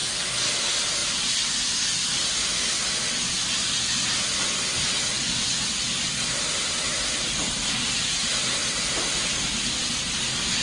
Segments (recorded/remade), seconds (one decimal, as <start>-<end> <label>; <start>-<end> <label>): 0.0-6.9 recorded; 6.9-7.7 remade; 7.7-8.6 recorded; 8.6-9.4 remade; 9.4-10.6 recorded